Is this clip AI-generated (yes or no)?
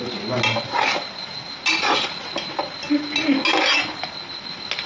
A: no